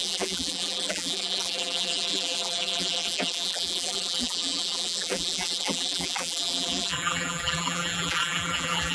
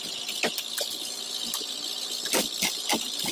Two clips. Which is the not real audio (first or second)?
first